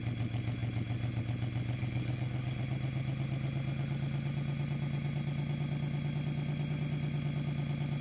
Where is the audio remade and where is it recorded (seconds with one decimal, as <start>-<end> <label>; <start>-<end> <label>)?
0.0-1.8 recorded; 1.8-2.6 remade; 2.6-8.0 recorded